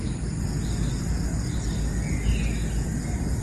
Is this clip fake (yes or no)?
no